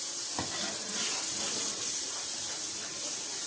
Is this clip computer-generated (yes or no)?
no